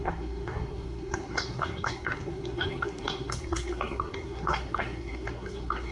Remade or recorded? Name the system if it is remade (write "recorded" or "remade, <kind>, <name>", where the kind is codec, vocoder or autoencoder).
remade, codec, SNAC